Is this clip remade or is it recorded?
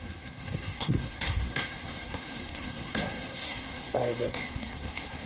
remade